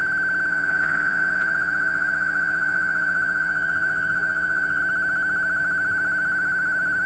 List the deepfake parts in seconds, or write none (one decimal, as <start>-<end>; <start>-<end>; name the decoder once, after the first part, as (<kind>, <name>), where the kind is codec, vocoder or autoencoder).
0.5-4.8 (vocoder, Vocos)